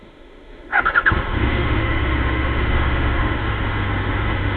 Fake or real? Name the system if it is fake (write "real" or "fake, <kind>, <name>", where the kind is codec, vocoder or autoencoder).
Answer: fake, autoencoder, DAC-VAE